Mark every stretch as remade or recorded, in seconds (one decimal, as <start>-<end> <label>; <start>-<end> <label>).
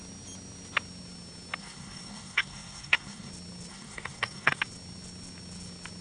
0.0-1.6 recorded; 1.6-3.3 remade; 3.3-3.7 recorded; 3.7-4.6 remade; 4.6-6.0 recorded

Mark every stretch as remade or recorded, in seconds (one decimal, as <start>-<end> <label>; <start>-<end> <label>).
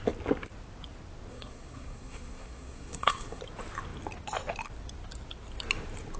0.0-1.3 recorded; 1.3-3.4 remade; 3.4-6.2 recorded